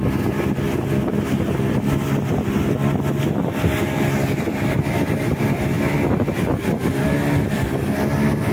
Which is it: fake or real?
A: real